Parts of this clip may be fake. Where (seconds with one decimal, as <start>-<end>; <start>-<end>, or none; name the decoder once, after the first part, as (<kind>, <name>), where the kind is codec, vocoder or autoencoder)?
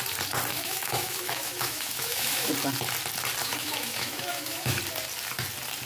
0.5-2.5 (autoencoder, DAC-VAE); 3.4-4.8